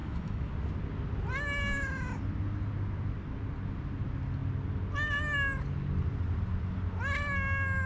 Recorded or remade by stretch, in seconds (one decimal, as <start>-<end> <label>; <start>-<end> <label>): 0.0-0.5 remade; 0.5-7.9 recorded